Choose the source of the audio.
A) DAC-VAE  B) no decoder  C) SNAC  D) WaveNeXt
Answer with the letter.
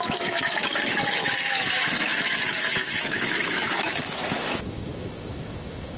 A